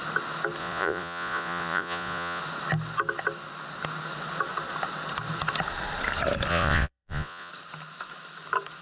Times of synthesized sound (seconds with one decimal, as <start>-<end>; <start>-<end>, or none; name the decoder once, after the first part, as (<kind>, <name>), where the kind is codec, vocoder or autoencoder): 0.6-2.4 (vocoder, Vocos); 6.5-7.5